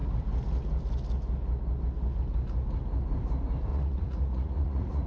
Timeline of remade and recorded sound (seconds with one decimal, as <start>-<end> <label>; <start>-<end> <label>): 0.0-3.7 recorded; 3.7-5.1 remade